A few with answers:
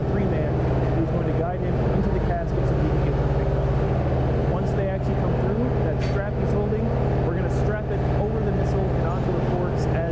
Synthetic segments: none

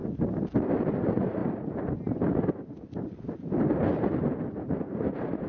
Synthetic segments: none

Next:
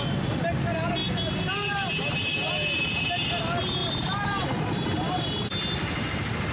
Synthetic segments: 1.0-2.5; 3.8-5.4

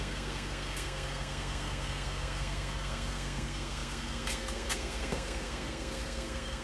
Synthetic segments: 0.0-6.6

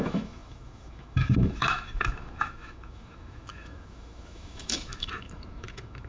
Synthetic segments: 0.0-6.1

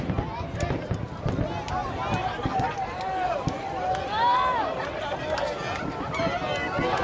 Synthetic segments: 2.2-3.0

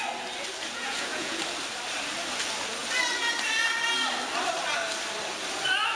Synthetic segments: 0.6-1.4